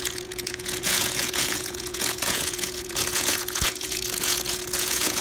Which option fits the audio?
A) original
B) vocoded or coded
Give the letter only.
B